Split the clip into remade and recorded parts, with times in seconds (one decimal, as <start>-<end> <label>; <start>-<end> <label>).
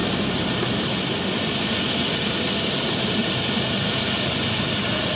0.0-0.9 remade; 0.9-3.2 recorded; 3.2-4.6 remade; 4.6-5.2 recorded